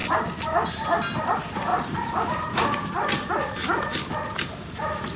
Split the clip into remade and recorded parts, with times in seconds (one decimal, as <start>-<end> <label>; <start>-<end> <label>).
0.0-5.2 recorded